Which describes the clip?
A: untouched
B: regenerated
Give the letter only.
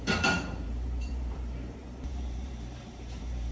B